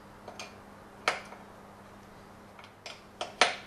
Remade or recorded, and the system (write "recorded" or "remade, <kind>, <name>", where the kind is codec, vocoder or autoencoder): recorded